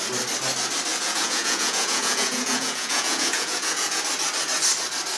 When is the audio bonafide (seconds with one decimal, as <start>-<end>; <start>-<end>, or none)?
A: 0.0-0.9; 4.0-5.2